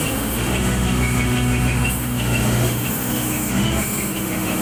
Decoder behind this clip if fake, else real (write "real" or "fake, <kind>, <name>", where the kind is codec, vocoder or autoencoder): fake, autoencoder, DAC-VAE